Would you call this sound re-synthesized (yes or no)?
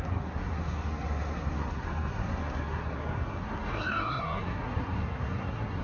yes